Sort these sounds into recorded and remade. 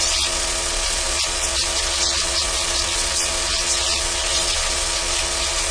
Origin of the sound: remade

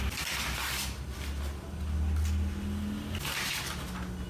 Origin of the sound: recorded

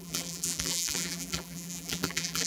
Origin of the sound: remade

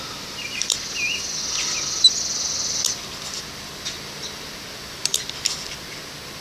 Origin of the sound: recorded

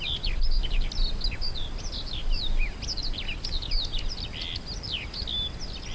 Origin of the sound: recorded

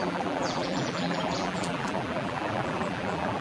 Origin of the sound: remade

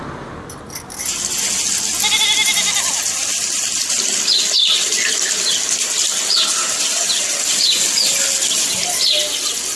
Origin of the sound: recorded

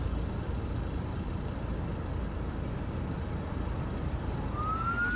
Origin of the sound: recorded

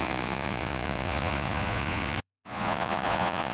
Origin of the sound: remade